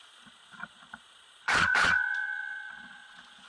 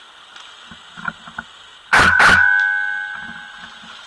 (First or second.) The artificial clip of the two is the first